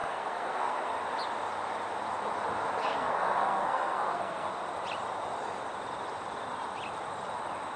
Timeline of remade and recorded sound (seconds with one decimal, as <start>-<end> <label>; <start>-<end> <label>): 0.0-1.0 remade; 1.0-2.8 recorded; 2.8-4.5 remade; 4.5-7.8 recorded